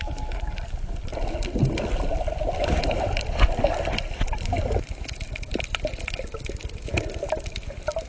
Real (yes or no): yes